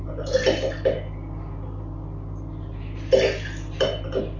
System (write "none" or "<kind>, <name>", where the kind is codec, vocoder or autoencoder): none